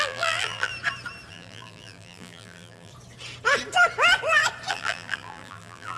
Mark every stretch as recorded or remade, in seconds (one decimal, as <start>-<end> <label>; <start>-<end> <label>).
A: 0.0-0.7 remade; 0.7-1.3 recorded; 1.3-2.9 remade; 2.9-4.7 recorded; 4.7-6.0 remade